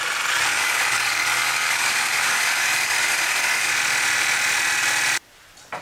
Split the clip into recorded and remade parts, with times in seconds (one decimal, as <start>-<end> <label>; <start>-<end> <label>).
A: 0.0-0.5 recorded; 0.5-3.7 remade; 3.7-5.8 recorded